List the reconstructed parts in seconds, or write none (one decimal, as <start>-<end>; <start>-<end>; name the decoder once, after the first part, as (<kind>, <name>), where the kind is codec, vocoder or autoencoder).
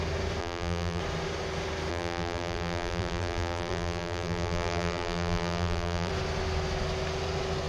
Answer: 0.4-1.0 (vocoder, BigVGAN v2); 1.9-6.1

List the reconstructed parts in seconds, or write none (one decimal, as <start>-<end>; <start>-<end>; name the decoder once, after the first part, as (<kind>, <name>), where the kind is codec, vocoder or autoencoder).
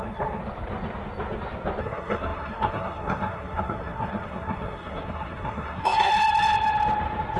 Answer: 0.0-0.4 (codec, SNAC); 1.8-6.1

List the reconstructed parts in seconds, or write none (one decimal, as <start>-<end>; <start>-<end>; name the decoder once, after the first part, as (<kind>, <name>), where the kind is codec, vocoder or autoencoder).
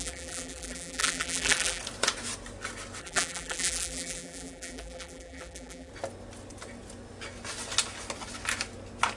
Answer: 0.0-1.8 (vocoder, BigVGAN v2); 3.0-5.9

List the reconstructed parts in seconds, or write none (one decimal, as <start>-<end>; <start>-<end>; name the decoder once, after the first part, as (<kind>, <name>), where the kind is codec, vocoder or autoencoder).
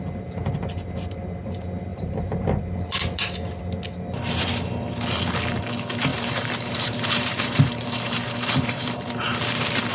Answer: 1.9-2.6 (vocoder, BigVGAN v2); 6.1-9.1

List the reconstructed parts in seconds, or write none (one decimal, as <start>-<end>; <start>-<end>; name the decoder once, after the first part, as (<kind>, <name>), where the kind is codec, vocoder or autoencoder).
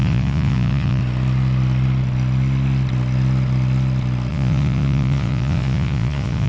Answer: 0.0-1.0 (vocoder, Vocos); 4.3-6.5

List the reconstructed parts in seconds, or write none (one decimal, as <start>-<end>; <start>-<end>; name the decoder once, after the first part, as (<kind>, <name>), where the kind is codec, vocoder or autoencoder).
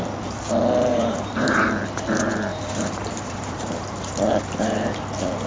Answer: 0.9-1.7 (vocoder, BigVGAN v2); 2.5-4.6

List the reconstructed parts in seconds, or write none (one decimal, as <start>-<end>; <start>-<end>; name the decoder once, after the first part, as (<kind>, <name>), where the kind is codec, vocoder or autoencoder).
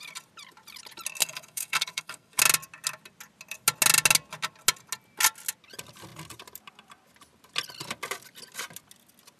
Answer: 1.2-2.4 (codec, SNAC)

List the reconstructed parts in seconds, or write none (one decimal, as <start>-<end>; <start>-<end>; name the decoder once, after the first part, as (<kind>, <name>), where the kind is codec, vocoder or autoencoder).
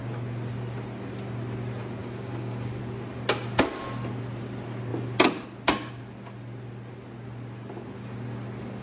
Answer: 2.0-2.8 (codec, DAC)